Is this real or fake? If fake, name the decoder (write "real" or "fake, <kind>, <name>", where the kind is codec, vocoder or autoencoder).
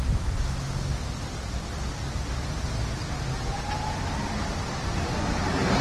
real